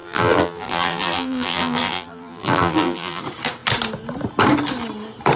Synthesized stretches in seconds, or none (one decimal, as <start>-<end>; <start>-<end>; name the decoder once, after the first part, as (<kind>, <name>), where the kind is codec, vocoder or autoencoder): 0.0-3.2 (vocoder, BigVGAN v2)